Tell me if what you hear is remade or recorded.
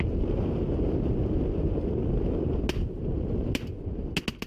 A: recorded